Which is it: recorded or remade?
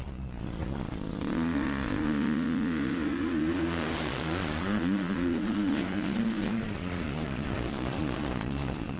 remade